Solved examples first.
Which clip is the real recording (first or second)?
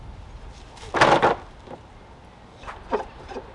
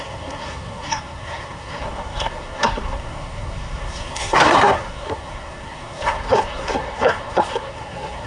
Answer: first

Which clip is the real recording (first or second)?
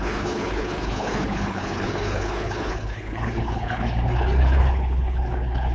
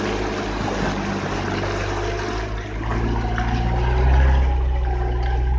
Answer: second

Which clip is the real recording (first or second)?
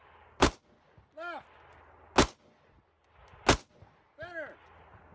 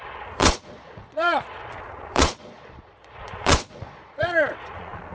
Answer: first